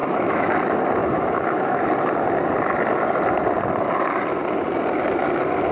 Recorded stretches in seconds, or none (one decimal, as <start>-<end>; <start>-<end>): 0.5-1.0; 1.8-5.7